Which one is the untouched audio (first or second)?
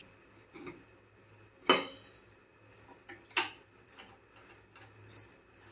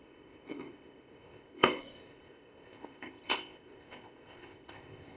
first